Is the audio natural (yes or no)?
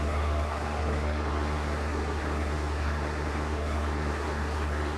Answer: no